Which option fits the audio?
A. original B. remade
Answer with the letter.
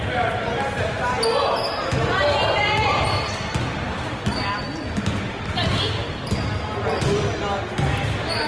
A